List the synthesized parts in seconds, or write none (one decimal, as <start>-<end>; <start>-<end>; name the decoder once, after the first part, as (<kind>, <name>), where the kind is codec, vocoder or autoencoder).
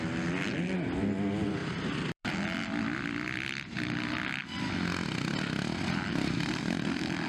1.6-2.3 (vocoder, BigVGAN v2)